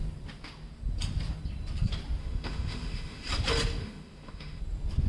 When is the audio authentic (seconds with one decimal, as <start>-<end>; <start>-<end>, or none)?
0.0-2.2; 3.3-3.8; 4.6-5.1